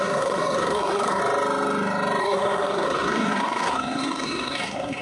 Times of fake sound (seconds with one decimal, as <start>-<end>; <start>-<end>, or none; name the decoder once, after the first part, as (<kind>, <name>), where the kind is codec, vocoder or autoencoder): 0.0-1.2 (codec, SNAC); 2.2-5.0